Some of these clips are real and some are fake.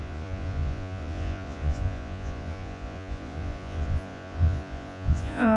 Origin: fake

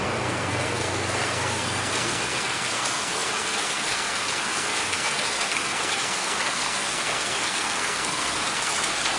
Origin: fake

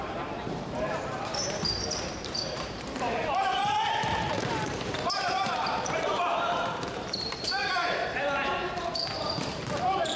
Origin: fake